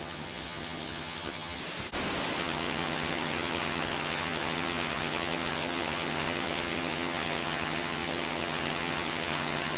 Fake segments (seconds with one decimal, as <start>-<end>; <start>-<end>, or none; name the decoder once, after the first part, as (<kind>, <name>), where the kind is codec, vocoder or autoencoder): 0.0-1.6 (vocoder, HiFi-GAN); 2.4-9.8